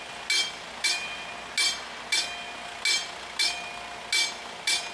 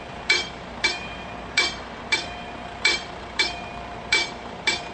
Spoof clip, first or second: second